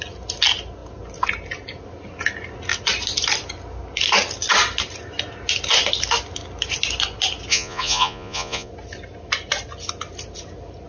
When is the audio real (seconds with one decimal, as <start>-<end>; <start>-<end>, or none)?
0.0-7.5; 8.7-10.9